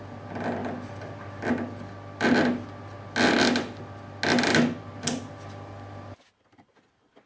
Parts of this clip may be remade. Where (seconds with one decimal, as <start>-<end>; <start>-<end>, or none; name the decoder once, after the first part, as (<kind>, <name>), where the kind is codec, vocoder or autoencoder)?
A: none

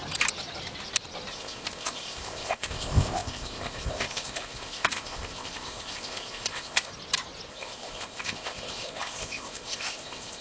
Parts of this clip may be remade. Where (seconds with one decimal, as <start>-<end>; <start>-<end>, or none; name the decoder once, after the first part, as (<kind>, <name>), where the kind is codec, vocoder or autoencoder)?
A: 1.3-6.9 (codec, ZipCodec); 7.5-10.4

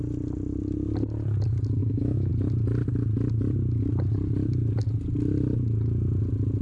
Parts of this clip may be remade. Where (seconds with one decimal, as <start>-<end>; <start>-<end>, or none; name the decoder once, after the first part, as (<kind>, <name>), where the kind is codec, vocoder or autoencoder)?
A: 1.8-2.3 (autoencoder, DAC-VAE)

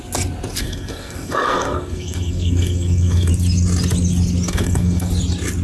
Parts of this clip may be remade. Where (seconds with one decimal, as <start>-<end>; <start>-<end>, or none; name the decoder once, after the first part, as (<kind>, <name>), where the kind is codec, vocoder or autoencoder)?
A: 0.6-3.3 (codec, SNAC); 4.5-5.1

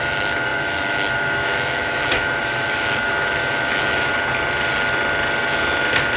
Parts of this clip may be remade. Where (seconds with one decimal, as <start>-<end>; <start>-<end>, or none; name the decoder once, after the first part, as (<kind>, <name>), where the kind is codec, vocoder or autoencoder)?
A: 0.0-4.1 (autoencoder, DAC-VAE)

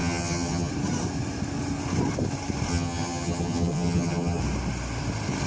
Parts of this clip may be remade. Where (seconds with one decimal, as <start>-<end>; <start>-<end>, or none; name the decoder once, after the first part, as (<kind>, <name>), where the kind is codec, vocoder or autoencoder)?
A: 0.0-0.7 (vocoder, HiFi-GAN); 2.7-4.4